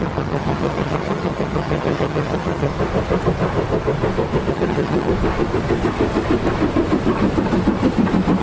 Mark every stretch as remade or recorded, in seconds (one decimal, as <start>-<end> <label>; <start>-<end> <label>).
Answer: 0.0-2.7 remade; 2.7-4.5 recorded; 4.5-5.1 remade; 5.1-8.4 recorded